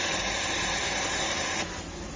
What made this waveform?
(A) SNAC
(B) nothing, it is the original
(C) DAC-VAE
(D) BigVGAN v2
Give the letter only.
B